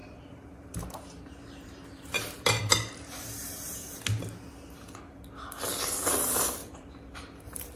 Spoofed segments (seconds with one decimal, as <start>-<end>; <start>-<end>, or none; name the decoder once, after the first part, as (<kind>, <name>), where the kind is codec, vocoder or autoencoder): 0.0-3.9 (vocoder, BigVGAN v2); 6.6-7.8